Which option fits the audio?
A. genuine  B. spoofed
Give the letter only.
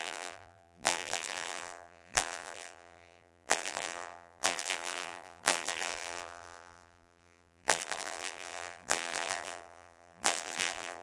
B